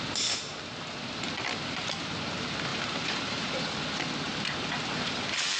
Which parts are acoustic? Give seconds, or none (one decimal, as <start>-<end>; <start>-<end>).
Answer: 0.0-2.7; 3.7-5.6